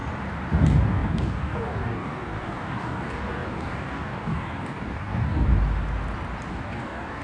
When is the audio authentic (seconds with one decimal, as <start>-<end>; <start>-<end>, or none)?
0.0-0.5; 5.5-6.5